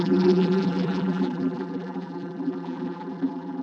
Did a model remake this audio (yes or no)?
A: yes